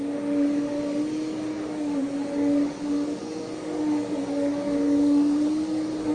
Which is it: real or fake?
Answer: fake